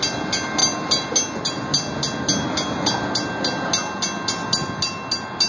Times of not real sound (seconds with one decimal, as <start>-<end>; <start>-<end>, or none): none